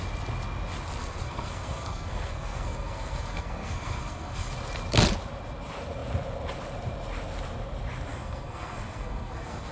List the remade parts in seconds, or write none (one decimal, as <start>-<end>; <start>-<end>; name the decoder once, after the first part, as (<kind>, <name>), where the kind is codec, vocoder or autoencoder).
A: 1.0-4.5 (codec, SNAC); 8.1-9.7